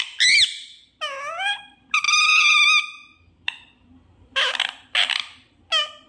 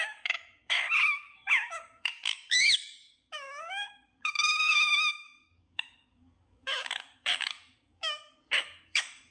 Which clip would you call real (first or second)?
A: first